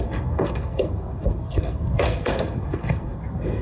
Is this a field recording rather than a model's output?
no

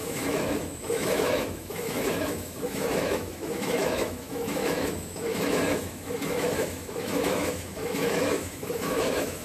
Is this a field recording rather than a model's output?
no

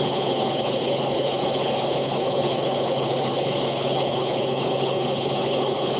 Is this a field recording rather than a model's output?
no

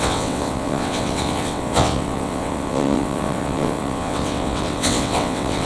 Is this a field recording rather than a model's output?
no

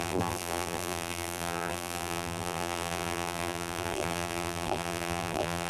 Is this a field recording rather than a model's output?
no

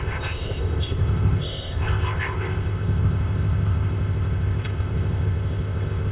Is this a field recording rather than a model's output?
no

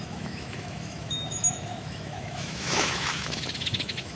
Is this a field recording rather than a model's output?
no